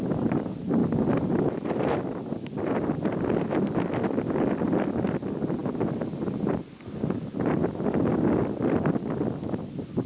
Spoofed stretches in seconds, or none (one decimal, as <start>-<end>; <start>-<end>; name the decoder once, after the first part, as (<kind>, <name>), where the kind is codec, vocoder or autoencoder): none